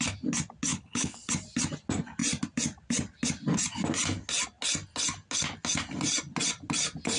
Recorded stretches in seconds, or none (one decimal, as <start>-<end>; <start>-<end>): 0.0-0.7; 1.3-7.2